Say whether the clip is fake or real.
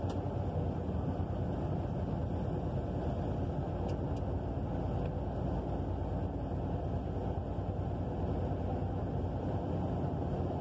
real